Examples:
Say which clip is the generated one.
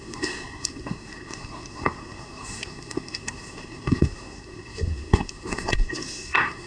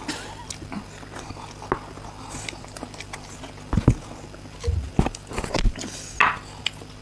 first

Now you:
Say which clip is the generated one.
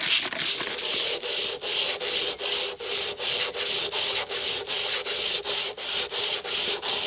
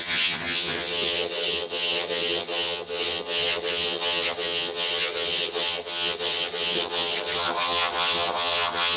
second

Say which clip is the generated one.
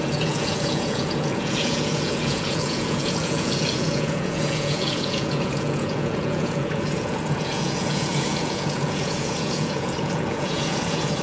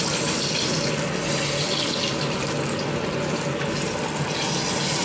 first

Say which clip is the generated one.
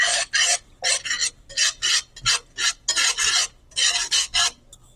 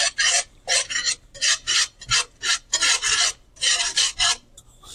second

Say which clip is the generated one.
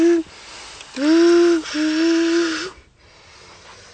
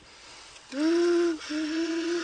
second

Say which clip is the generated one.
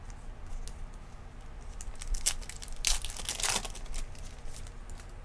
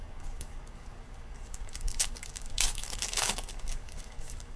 second